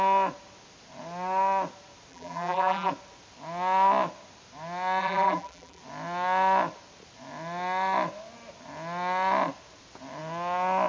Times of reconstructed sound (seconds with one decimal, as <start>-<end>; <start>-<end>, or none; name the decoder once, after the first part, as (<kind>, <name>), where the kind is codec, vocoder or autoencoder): 2.1-2.9 (vocoder, BigVGAN v2); 5.0-5.8